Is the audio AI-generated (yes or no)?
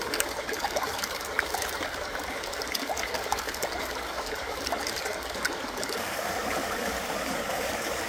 yes